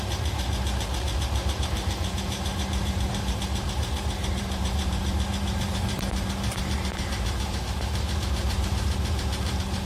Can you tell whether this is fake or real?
fake